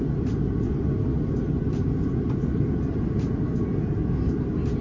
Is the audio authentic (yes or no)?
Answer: yes